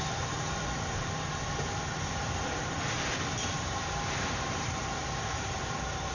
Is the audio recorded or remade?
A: remade